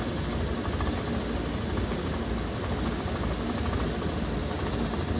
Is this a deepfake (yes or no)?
no